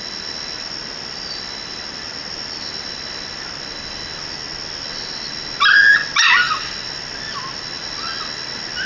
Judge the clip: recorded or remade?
recorded